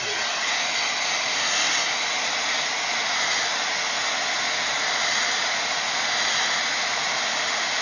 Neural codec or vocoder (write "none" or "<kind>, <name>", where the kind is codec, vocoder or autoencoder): none